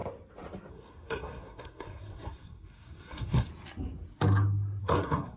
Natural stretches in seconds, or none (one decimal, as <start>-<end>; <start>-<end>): 0.0-0.7; 3.5-4.8